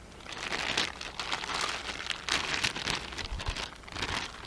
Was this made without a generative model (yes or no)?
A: yes